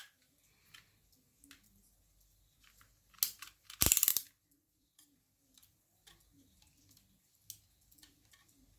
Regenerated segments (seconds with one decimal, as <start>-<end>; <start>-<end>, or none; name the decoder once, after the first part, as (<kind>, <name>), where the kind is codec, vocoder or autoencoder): 4.1-5.2 (vocoder, BigVGAN v2)